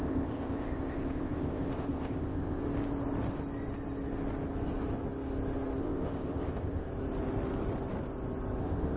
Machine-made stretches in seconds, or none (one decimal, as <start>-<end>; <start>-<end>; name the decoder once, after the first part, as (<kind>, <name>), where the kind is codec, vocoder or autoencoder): 0.0-2.6 (codec, ZipCodec); 5.8-6.9; 8.6-9.0